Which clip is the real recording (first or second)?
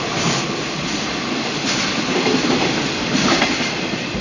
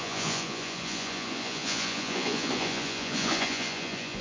first